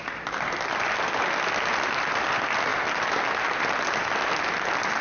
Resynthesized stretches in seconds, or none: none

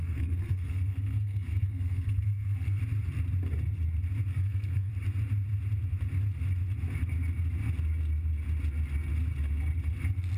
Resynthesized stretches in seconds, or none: 0.0-2.8; 4.3-4.9

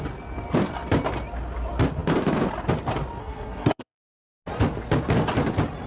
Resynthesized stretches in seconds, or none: 3.2-4.2

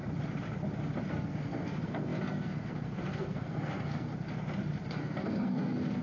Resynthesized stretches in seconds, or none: 1.1-4.1; 5.0-6.0